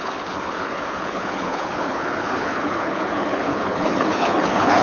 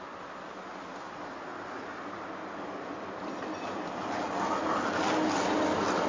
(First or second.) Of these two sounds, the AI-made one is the first